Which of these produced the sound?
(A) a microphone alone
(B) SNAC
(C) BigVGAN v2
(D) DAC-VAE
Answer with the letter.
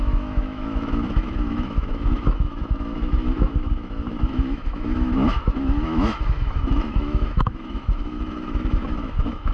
D